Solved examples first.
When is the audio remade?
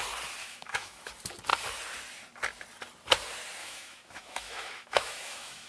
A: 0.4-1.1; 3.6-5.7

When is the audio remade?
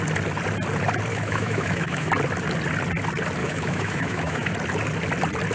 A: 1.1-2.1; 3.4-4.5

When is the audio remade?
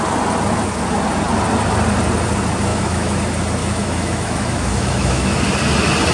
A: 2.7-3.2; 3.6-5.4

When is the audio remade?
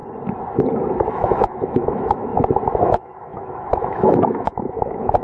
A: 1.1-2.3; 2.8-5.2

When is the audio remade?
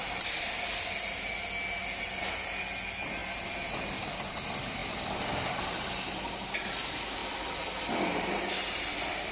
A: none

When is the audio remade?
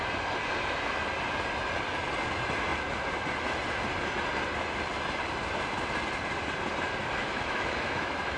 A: 7.2-8.4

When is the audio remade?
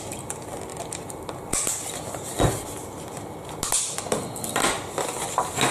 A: none